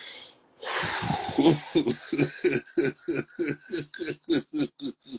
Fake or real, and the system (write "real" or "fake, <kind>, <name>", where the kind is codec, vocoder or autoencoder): real